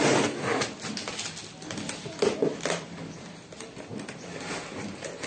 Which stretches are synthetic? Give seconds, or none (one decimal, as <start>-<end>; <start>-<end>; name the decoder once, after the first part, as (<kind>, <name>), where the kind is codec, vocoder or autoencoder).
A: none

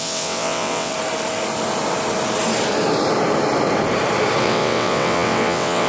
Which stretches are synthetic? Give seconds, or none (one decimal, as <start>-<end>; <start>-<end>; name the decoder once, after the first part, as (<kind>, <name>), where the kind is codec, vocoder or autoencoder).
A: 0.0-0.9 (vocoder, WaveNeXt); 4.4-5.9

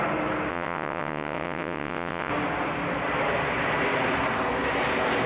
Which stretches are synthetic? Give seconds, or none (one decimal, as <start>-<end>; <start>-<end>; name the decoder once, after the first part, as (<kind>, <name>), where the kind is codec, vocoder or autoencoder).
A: 0.5-2.3 (vocoder, WaveNeXt)

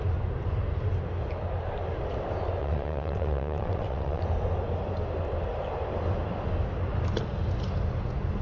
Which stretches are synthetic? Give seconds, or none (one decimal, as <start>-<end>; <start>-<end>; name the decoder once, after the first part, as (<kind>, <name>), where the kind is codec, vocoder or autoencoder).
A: 2.6-4.2 (vocoder, WaveNeXt)

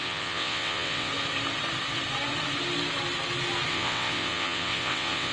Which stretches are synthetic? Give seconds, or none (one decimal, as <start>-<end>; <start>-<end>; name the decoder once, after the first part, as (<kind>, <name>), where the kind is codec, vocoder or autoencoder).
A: 0.0-1.1 (vocoder, WaveNeXt); 3.7-5.3

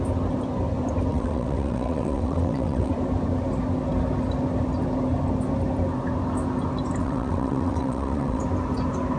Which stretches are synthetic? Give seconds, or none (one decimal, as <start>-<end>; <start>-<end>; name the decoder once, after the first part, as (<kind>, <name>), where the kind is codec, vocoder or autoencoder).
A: 1.1-2.9 (vocoder, WaveNeXt); 7.0-8.4

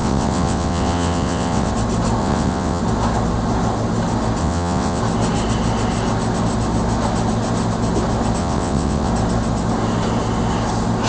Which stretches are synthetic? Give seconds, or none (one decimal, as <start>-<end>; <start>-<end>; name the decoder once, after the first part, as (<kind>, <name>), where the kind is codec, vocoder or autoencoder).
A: 0.0-1.7 (vocoder, WaveNeXt); 2.2-2.8; 4.4-5.0; 8.4-9.1

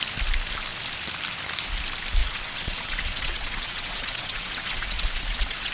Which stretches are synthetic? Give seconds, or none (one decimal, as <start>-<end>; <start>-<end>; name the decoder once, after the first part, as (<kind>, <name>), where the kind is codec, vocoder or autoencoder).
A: 2.2-5.7 (vocoder, WaveNeXt)